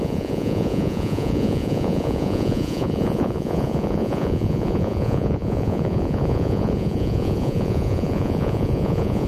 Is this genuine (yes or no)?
no